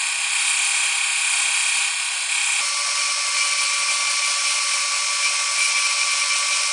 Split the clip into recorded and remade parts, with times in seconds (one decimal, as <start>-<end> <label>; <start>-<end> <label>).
0.0-6.7 recorded